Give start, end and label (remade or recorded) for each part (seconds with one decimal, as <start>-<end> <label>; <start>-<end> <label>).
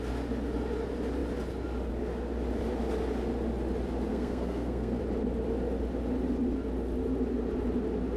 0.0-4.1 recorded; 4.1-5.0 remade; 5.0-8.2 recorded